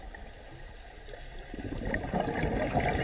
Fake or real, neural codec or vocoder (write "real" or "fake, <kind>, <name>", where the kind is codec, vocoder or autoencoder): real